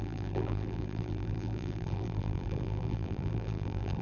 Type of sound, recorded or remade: remade